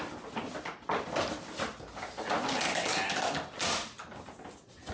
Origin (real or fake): real